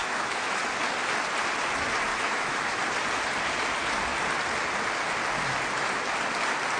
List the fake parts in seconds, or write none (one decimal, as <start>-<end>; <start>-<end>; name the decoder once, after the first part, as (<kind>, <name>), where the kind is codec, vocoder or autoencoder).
0.0-0.6 (autoencoder, DAC-VAE); 2.1-2.8